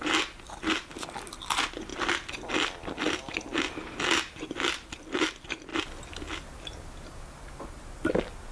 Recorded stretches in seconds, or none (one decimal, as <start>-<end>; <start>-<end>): 0.0-8.5